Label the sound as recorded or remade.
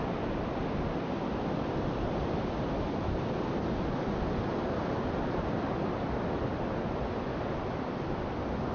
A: recorded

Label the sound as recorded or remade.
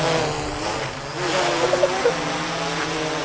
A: recorded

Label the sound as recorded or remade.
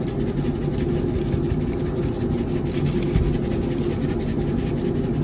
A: recorded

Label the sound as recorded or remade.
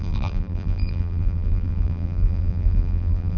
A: remade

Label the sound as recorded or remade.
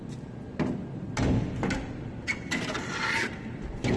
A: recorded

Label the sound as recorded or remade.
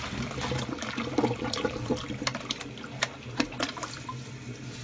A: recorded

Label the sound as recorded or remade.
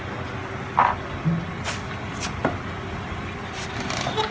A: recorded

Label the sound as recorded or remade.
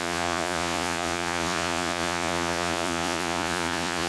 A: remade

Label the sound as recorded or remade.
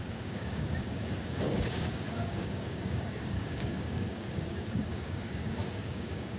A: remade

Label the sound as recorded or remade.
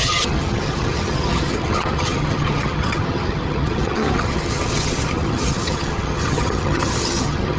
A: remade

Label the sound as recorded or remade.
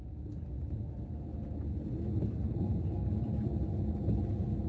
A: recorded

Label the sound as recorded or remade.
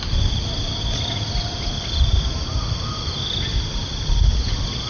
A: recorded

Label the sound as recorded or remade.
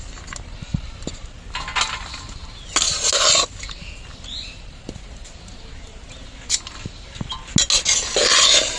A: recorded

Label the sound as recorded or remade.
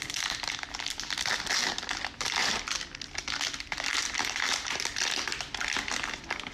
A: recorded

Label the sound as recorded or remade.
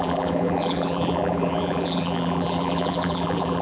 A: remade